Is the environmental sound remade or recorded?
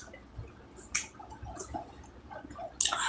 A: recorded